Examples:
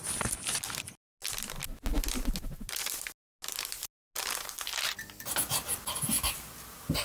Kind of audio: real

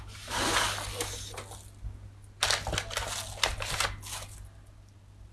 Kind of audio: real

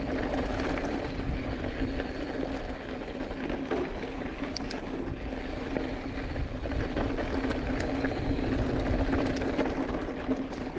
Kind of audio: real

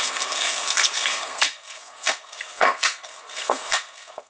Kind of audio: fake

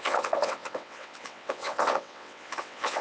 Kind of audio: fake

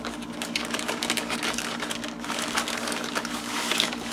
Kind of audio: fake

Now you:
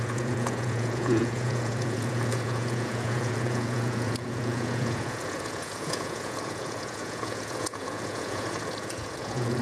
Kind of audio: fake